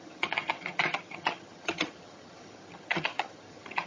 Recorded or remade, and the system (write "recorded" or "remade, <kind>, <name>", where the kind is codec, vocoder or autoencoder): remade, vocoder, HiFi-GAN